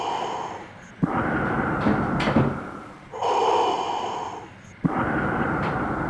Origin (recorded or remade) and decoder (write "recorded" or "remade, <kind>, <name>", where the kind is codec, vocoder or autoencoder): recorded